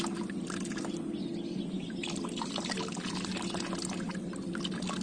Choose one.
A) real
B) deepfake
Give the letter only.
A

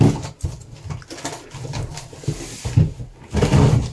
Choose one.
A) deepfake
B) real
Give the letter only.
B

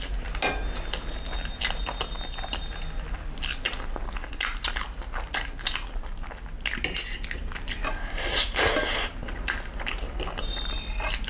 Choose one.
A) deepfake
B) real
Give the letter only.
B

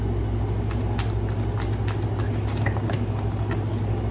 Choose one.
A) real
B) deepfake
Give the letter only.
A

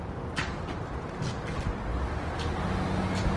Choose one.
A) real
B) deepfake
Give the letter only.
A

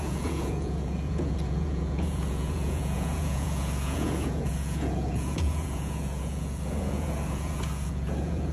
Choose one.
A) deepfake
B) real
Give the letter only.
A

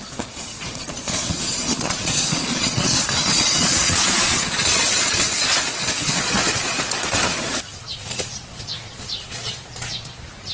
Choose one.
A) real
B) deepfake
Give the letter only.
B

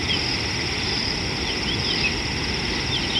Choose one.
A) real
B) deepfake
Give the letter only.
A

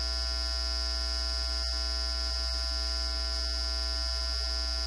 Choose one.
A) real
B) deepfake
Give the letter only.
A